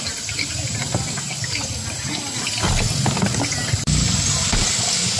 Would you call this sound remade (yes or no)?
no